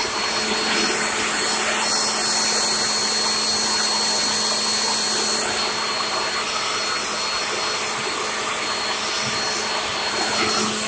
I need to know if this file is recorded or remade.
recorded